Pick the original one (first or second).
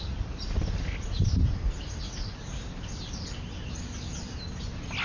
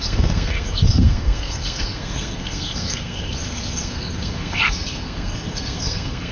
first